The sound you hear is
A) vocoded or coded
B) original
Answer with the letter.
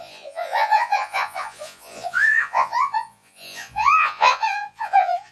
A